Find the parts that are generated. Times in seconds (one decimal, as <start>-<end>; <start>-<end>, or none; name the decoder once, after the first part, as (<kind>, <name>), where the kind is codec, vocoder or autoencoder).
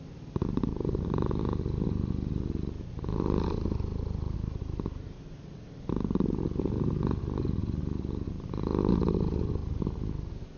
none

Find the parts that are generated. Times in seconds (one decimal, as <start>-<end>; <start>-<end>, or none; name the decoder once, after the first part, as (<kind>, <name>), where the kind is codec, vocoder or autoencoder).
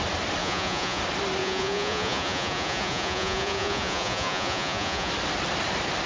0.4-1.0 (vocoder, Vocos); 1.4-5.1